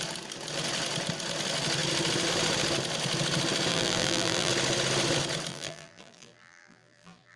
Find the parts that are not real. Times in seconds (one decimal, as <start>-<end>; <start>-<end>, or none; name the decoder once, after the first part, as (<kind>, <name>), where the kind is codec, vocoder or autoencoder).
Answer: 3.7-4.5 (vocoder, BigVGAN v2); 5.5-7.4